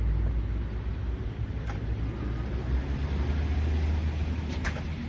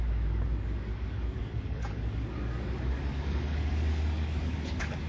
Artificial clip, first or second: second